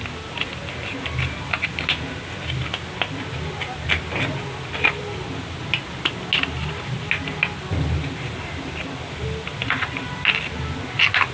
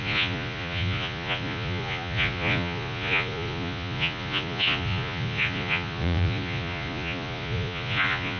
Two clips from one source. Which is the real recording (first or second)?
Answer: first